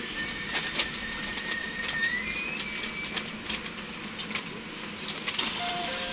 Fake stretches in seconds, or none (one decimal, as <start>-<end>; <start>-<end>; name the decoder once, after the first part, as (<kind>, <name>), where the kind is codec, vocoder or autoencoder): 0.0-1.6 (vocoder, BigVGAN v2); 5.3-6.1